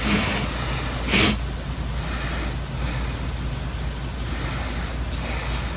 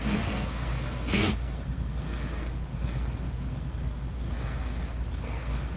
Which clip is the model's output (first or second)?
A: second